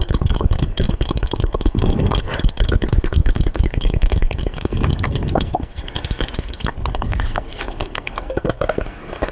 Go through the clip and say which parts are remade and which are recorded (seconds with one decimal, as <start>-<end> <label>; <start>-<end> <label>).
0.0-9.3 remade